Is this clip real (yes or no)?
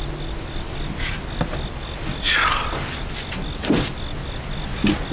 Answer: yes